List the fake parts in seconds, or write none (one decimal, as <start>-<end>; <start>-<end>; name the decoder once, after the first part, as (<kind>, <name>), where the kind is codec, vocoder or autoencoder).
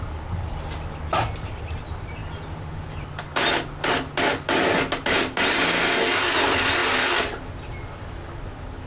none